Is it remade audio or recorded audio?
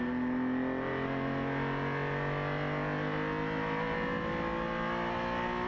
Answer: recorded